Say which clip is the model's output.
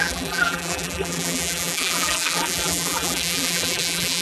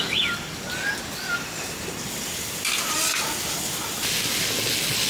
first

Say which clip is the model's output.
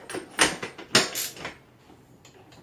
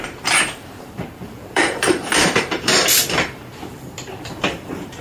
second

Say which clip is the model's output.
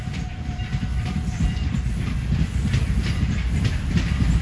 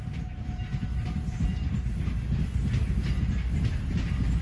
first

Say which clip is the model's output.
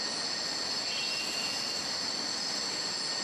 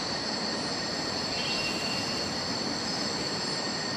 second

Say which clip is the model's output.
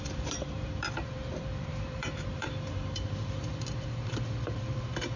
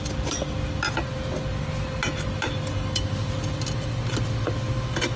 first